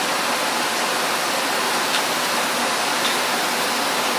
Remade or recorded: recorded